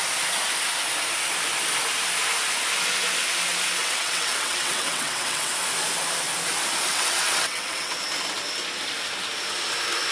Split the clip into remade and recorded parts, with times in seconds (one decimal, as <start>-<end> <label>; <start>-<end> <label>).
0.0-3.8 recorded; 3.8-5.5 remade; 5.5-6.9 recorded; 6.9-7.9 remade; 7.9-10.1 recorded